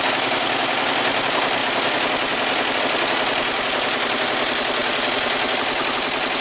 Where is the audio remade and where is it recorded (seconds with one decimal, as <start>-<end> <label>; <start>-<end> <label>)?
0.0-6.4 recorded